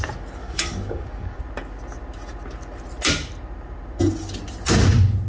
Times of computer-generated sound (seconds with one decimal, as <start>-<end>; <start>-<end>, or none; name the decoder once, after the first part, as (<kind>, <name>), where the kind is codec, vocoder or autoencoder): 0.4-1.4 (codec, DAC)